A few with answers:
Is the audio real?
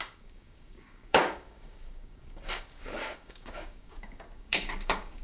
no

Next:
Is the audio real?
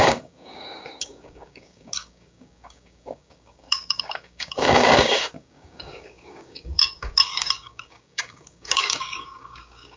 no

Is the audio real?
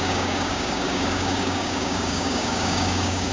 no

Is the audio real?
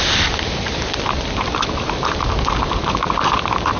yes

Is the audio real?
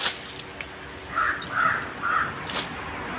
yes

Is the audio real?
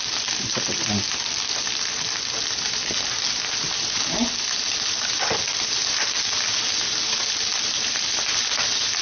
yes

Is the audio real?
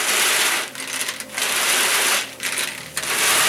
yes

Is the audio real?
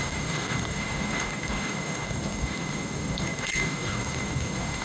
no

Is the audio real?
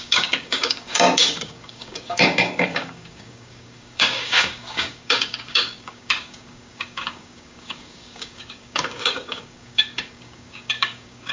no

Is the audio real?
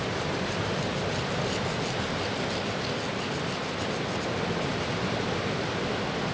yes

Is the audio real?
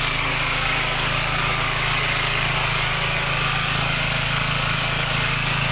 no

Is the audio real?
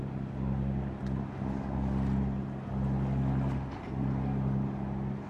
yes